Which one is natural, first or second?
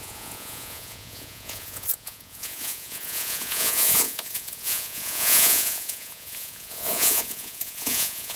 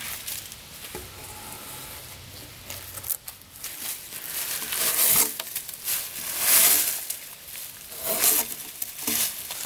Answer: second